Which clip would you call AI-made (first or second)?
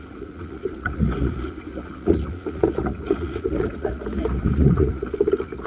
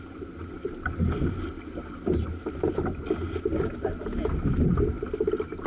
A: first